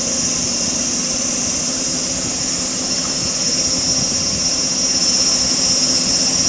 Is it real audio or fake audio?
real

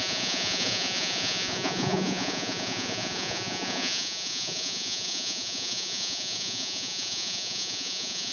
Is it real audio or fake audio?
fake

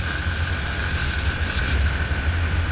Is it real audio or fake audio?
real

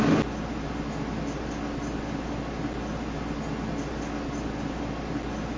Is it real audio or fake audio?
real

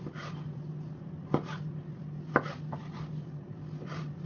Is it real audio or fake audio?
real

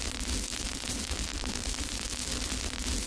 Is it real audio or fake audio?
real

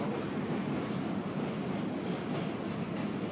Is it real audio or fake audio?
real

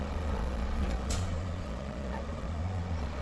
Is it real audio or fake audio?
fake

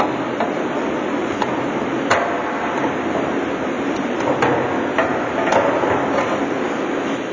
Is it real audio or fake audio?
real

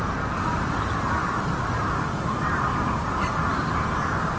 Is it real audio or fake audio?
real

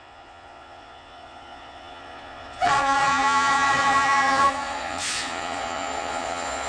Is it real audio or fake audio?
fake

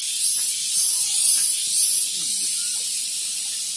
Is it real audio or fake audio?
real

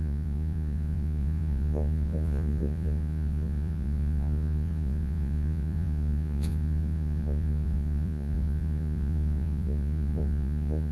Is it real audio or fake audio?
fake